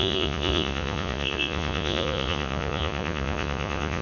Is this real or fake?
fake